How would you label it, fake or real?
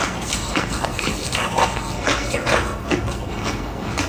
fake